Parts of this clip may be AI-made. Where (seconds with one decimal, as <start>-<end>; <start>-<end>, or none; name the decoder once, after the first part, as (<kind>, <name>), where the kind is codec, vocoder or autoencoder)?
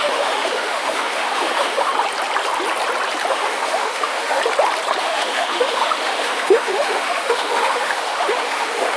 0.0-1.9 (autoencoder, DAC-VAE); 3.3-4.4; 5.0-9.0